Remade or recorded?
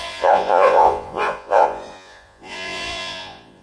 remade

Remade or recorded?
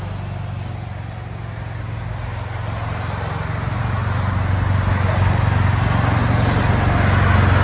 recorded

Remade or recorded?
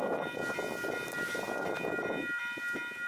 recorded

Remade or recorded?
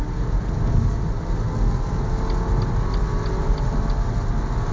recorded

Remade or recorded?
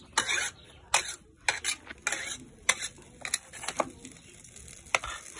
recorded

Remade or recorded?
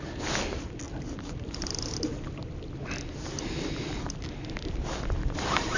recorded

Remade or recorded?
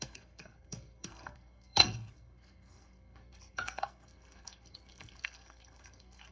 remade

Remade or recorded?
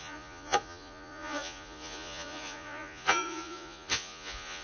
remade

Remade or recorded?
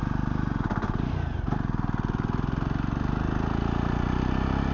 recorded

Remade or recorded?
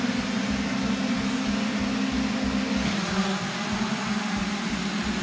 recorded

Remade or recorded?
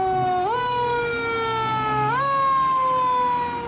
recorded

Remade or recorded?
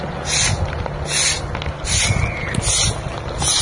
recorded